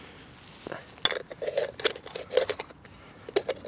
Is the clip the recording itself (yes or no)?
yes